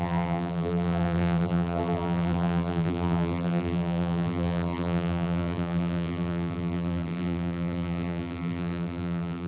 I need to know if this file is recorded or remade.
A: remade